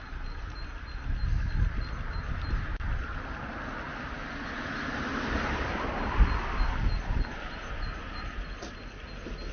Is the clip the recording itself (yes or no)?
yes